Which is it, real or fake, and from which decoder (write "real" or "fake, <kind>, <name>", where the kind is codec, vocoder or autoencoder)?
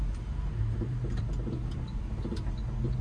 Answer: real